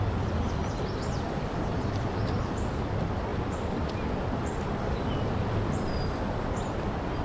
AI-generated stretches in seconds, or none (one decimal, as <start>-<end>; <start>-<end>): 0.6-2.4; 3.3-5.9